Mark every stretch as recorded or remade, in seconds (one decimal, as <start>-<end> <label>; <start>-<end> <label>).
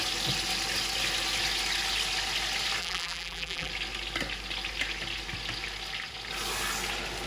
0.0-2.8 recorded; 2.8-3.7 remade; 3.7-7.3 recorded